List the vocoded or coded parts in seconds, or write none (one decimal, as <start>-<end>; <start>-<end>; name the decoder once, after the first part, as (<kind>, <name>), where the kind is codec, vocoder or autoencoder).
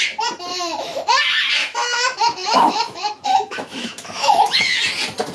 0.5-1.1 (autoencoder, DAC-VAE); 1.6-4.8